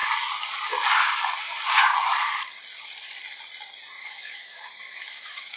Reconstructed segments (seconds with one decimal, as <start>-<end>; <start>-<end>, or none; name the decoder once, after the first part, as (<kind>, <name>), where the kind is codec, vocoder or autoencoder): 4.0-5.6 (autoencoder, DAC-VAE)